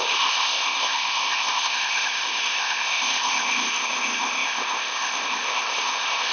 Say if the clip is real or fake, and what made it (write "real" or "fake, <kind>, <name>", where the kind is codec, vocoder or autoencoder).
fake, codec, ZipCodec